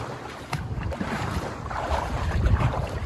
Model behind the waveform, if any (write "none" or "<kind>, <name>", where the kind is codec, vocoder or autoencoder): vocoder, BigVGAN v2